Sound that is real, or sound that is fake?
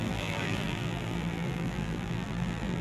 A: fake